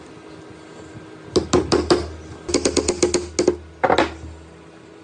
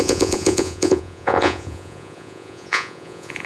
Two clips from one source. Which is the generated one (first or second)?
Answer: second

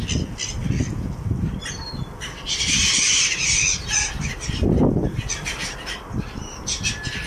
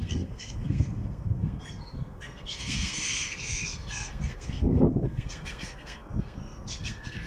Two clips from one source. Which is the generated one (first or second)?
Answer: second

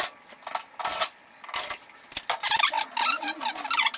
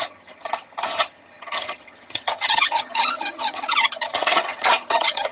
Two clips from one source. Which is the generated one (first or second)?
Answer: second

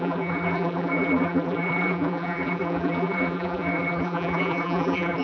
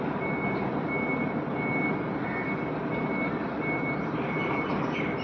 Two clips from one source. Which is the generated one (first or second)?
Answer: first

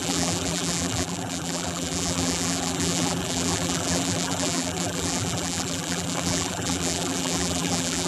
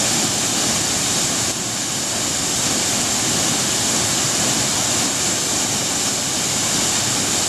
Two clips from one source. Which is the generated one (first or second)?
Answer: first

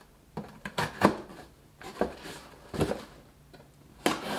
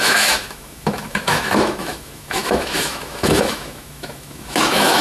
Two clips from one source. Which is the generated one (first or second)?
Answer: second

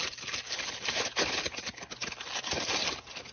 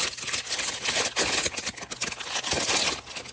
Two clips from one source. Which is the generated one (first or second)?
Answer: first